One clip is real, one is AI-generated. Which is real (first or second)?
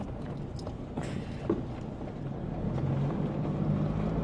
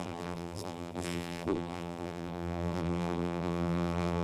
first